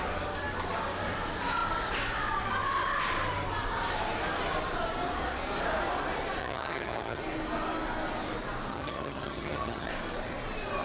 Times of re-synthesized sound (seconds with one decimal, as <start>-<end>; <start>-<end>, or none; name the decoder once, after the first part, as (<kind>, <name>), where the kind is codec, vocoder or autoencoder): 6.4-7.2 (vocoder, HiFi-GAN); 8.7-9.9